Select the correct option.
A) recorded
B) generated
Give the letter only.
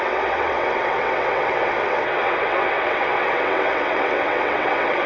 B